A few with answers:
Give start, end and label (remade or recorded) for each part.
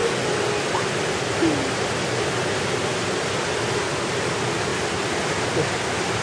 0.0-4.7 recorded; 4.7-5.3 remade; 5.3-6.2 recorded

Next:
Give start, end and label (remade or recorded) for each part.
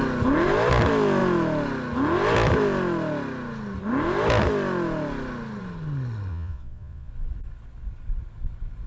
0.0-6.3 recorded; 6.3-7.1 remade; 7.1-8.9 recorded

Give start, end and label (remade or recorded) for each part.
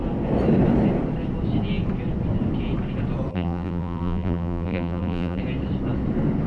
0.0-3.3 recorded; 3.3-5.4 remade; 5.4-6.5 recorded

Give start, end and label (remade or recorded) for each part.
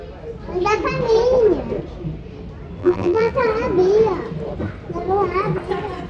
0.0-2.8 recorded; 2.8-3.3 remade; 3.3-6.1 recorded